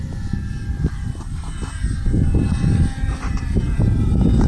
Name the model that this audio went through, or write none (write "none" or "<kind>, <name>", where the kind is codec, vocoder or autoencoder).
none